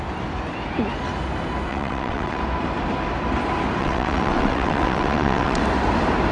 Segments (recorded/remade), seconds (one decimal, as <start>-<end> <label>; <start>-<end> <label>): 0.0-1.7 recorded; 1.7-2.4 remade; 2.4-3.8 recorded; 3.8-5.6 remade; 5.6-6.3 recorded